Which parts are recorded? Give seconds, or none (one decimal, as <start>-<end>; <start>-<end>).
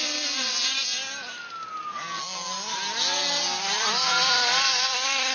1.0-4.2